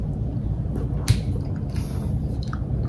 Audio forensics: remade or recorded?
recorded